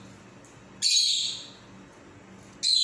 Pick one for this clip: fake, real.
real